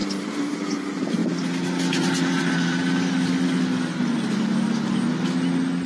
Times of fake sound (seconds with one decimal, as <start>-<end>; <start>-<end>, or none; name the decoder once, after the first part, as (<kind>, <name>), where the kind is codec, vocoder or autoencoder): 0.0-0.7 (vocoder, BigVGAN v2)